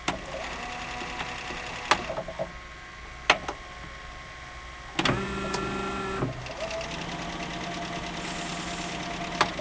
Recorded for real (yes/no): yes